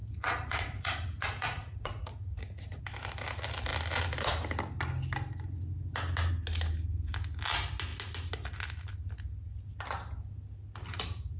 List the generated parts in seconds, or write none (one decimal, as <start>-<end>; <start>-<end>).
0.0-2.8